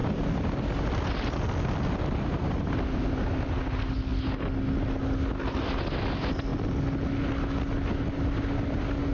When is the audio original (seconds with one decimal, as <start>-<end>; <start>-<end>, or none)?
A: 0.0-9.1